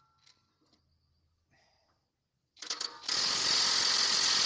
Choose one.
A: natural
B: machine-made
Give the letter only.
A